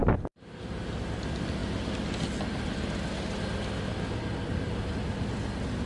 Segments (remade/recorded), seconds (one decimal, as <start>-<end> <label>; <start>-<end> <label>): 0.0-5.9 recorded